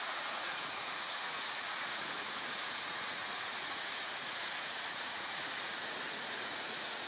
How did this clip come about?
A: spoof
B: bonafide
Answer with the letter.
A